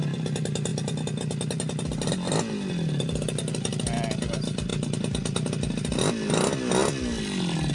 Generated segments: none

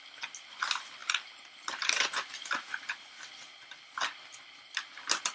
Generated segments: 1.0-3.1

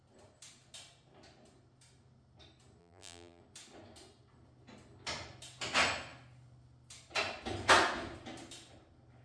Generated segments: 2.8-3.4

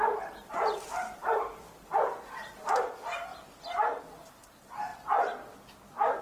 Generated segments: 0.0-3.3; 4.0-4.9

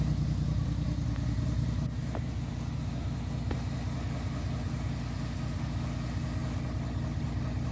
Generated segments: none

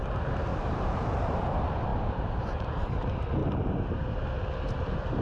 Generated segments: 0.5-1.4; 1.9-3.0; 3.4-4.3